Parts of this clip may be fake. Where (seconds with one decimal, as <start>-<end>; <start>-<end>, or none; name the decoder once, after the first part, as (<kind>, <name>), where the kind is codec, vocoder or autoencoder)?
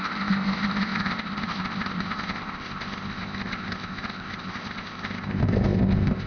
0.0-6.3 (codec, ZipCodec)